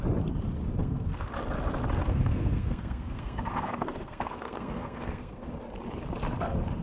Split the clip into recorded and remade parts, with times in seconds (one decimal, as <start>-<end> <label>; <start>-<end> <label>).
0.0-0.8 recorded; 0.8-1.3 remade; 1.3-2.0 recorded; 2.0-5.5 remade; 5.5-6.8 recorded